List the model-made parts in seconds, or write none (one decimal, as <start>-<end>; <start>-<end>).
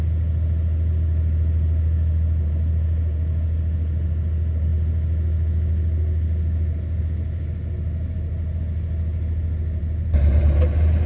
none